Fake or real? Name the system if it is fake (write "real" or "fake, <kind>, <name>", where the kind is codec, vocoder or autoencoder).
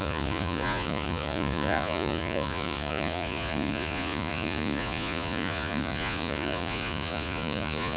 fake, vocoder, Vocos